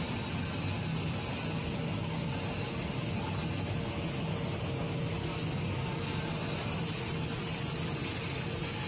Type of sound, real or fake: real